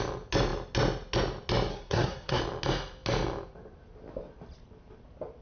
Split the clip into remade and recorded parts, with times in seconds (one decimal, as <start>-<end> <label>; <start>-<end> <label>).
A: 0.0-1.7 recorded; 1.7-2.4 remade; 2.4-5.4 recorded

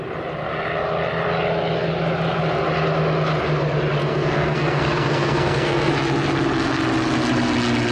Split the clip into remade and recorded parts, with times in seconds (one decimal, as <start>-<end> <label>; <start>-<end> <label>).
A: 0.0-4.0 recorded; 4.0-5.9 remade; 5.9-7.9 recorded

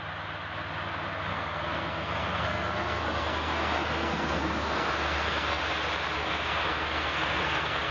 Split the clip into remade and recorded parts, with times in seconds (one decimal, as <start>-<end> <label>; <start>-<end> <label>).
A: 0.0-1.3 recorded; 1.3-5.6 remade; 5.6-6.2 recorded; 6.2-7.9 remade

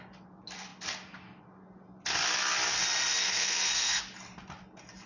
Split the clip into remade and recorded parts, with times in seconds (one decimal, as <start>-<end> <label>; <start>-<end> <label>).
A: 0.0-3.2 recorded; 3.2-4.0 remade; 4.0-5.1 recorded

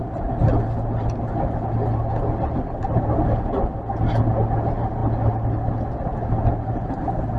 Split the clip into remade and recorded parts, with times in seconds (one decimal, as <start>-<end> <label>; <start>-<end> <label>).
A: 0.0-7.4 recorded